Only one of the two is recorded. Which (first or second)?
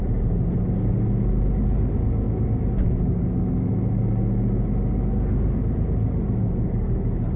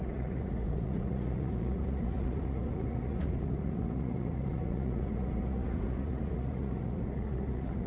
first